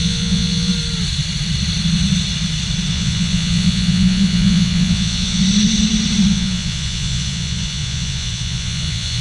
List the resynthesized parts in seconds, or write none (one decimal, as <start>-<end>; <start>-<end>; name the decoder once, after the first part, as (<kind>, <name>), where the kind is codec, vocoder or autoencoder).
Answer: 0.0-0.7 (vocoder, Vocos); 2.9-5.4; 6.3-9.2